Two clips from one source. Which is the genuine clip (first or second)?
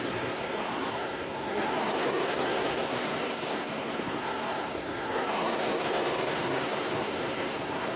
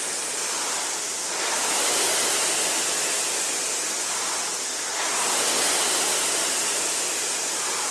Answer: second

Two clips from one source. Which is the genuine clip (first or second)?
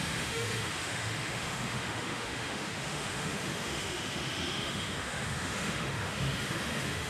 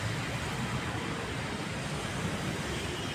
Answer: second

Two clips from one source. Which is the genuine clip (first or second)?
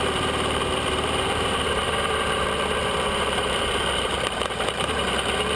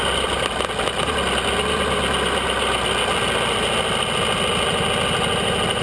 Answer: second